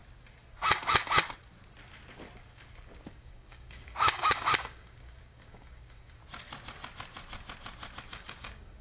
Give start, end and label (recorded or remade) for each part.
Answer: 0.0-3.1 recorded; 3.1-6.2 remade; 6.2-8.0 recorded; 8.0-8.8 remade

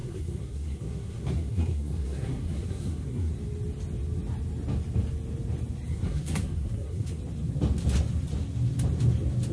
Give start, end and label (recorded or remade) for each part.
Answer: 0.0-3.3 remade; 3.3-5.9 recorded; 5.9-7.2 remade; 7.2-9.5 recorded

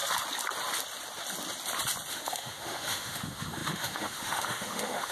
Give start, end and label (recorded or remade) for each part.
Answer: 0.0-2.1 recorded; 2.1-5.1 remade

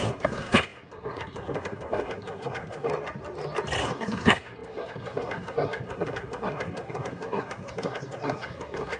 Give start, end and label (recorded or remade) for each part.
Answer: 0.0-2.9 remade; 2.9-3.8 recorded; 3.8-9.0 remade

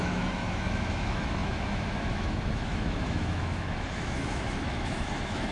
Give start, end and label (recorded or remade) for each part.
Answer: 0.0-5.5 remade

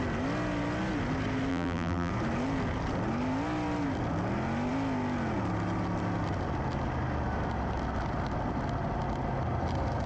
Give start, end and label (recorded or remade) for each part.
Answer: 0.0-1.5 recorded; 1.5-2.1 remade; 2.1-10.1 recorded

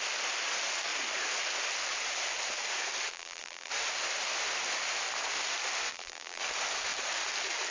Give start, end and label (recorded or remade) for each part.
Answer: 0.0-3.1 recorded; 3.1-3.7 remade; 3.7-5.9 recorded; 5.9-6.4 remade; 6.4-7.7 recorded

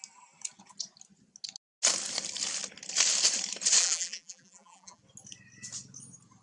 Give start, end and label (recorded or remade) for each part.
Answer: 0.0-3.8 recorded; 3.8-5.0 remade; 5.0-6.4 recorded